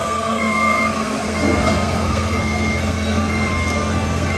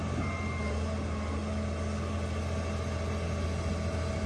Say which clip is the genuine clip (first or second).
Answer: second